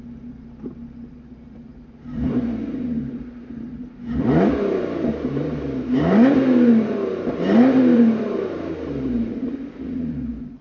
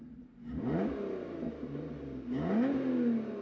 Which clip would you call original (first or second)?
second